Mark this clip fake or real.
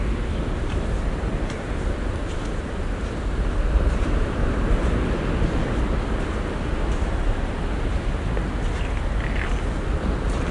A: real